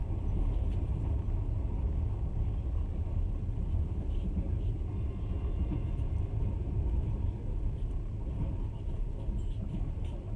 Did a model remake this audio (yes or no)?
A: no